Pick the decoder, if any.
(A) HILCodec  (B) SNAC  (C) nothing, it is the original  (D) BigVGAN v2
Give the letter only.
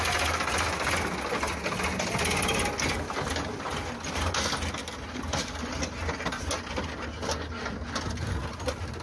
C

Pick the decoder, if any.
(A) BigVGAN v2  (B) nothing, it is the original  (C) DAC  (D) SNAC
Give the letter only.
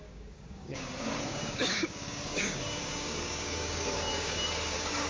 C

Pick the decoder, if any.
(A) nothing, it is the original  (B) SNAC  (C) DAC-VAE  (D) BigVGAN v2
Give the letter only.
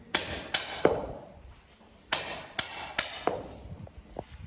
D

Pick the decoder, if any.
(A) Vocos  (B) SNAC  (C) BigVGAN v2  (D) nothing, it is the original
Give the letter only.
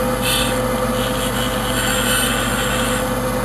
D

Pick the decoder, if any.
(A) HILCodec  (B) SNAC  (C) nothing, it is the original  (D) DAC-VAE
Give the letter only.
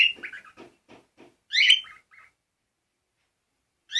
C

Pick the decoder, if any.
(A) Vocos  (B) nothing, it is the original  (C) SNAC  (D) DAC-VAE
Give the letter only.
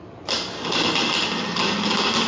B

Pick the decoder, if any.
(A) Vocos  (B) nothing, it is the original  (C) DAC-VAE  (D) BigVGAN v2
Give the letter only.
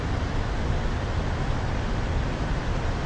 B